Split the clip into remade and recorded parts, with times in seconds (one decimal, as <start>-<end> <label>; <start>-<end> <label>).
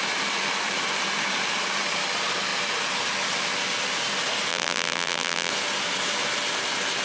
0.0-4.5 recorded; 4.5-5.5 remade; 5.5-7.0 recorded